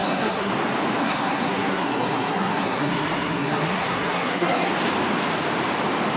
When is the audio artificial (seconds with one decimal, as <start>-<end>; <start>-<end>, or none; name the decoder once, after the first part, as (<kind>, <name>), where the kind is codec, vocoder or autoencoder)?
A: 0.0-0.5 (codec, SNAC); 1.0-4.7

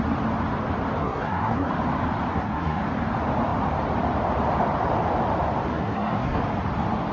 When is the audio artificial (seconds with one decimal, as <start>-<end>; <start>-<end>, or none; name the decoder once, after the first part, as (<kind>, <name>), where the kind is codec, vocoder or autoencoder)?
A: 1.0-1.7 (codec, SNAC); 2.3-2.8; 5.7-6.4